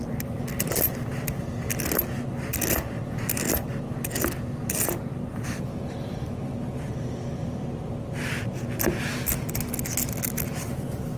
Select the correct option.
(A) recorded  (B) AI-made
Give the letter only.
A